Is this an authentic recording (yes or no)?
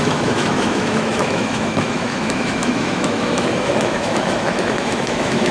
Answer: no